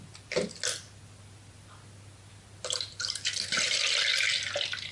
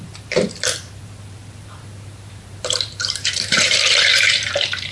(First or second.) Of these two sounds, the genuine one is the first